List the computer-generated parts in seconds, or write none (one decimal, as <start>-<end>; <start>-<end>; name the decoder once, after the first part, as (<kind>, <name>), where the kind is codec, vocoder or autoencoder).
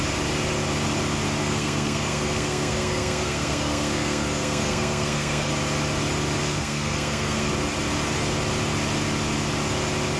1.4-5.5 (codec, SNAC); 6.4-7.5